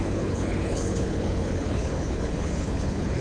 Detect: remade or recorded remade